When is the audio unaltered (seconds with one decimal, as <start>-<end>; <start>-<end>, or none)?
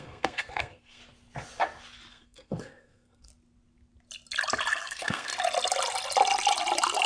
1.0-2.1; 3.3-4.7; 5.3-7.1